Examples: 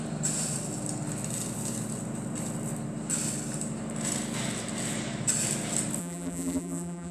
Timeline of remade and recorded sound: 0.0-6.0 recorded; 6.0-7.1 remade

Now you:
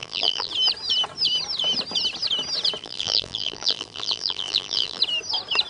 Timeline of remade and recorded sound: 0.0-0.5 remade; 0.5-2.8 recorded; 2.8-5.0 remade; 5.0-5.7 recorded

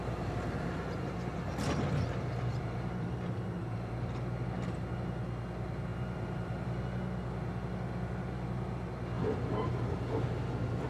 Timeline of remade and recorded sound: 0.0-2.5 recorded; 2.5-3.9 remade; 3.9-5.9 recorded; 5.9-6.8 remade; 6.8-10.9 recorded

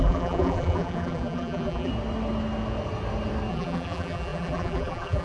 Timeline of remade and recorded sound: 0.0-1.9 remade; 1.9-3.5 recorded; 3.5-5.2 remade

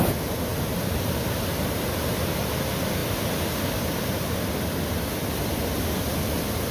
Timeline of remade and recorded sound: 0.0-0.5 recorded; 0.5-2.5 remade; 2.5-6.7 recorded